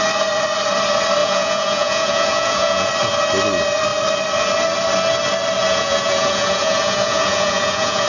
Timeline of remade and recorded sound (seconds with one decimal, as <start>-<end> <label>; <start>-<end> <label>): 0.0-1.2 recorded; 1.2-2.9 remade; 2.9-5.6 recorded; 5.6-8.1 remade